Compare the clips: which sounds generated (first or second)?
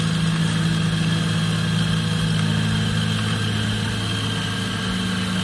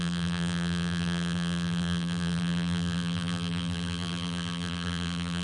second